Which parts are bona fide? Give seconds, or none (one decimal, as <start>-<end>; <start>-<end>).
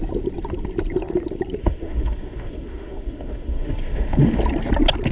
0.0-1.6; 4.4-5.1